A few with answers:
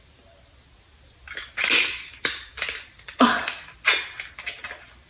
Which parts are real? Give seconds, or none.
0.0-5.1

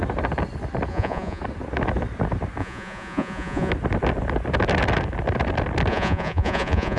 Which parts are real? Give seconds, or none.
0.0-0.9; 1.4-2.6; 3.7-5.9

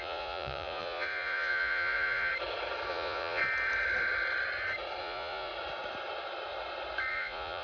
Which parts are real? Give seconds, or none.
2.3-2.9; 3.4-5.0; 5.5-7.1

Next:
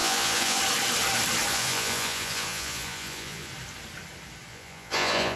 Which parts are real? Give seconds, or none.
0.6-1.5; 3.5-4.5

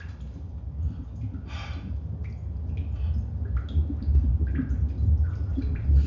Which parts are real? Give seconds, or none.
0.0-6.1

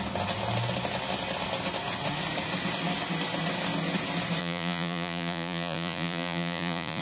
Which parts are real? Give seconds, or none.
0.0-4.4